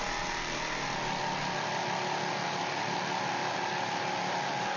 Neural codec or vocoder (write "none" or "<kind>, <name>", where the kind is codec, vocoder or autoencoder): none